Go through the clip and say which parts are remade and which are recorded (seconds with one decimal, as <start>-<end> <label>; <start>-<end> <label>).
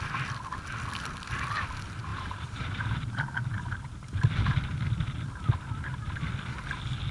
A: 0.0-2.1 recorded; 2.1-3.9 remade; 3.9-7.1 recorded